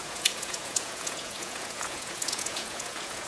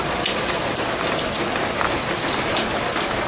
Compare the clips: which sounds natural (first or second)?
second